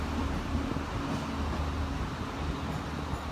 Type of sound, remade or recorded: recorded